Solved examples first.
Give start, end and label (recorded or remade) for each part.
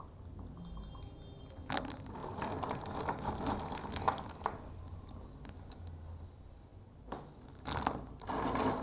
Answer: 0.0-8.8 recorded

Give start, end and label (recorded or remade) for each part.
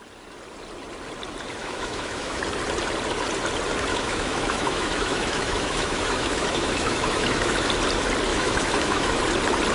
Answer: 0.0-1.6 recorded; 1.6-2.4 remade; 2.4-3.9 recorded; 3.9-7.7 remade; 7.7-8.3 recorded; 8.3-9.2 remade; 9.2-9.7 recorded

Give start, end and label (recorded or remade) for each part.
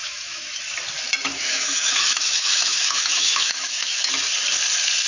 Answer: 0.0-0.6 remade; 0.6-1.3 recorded; 1.3-4.1 remade; 4.1-5.1 recorded